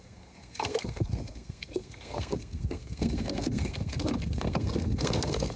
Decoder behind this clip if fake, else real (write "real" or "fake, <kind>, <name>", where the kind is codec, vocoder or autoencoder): fake, codec, SNAC